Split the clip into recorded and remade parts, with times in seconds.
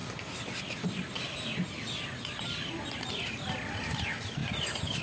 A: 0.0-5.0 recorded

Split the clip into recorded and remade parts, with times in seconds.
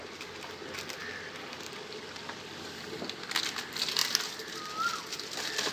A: 0.0-4.0 recorded; 4.0-5.7 remade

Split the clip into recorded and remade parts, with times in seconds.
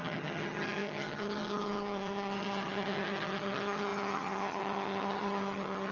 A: 0.0-5.9 remade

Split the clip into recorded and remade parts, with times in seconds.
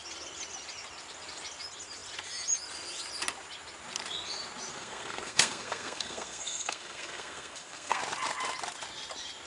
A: 0.0-4.7 recorded; 4.7-8.0 remade; 8.0-9.5 recorded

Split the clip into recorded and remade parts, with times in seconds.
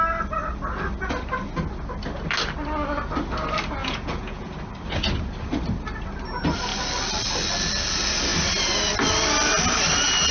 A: 0.0-3.8 recorded; 3.8-4.5 remade; 4.5-10.3 recorded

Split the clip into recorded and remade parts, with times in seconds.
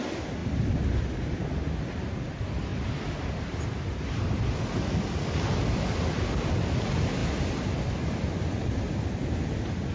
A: 0.0-9.9 recorded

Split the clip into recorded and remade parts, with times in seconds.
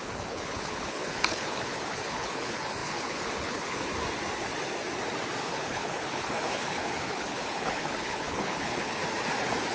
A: 0.0-3.9 remade; 3.9-5.4 recorded; 5.4-9.0 remade; 9.0-9.7 recorded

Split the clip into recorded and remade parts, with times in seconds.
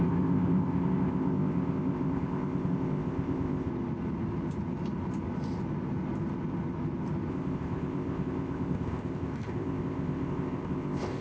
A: 0.0-3.7 remade; 3.7-7.3 recorded; 7.3-11.2 remade